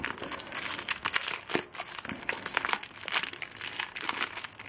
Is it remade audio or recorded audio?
recorded